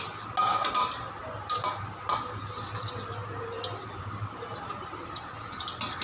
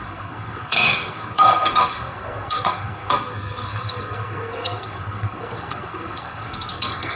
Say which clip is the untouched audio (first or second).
first